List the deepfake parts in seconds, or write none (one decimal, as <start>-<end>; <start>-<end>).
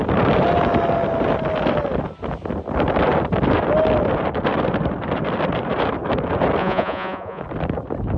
6.6-7.4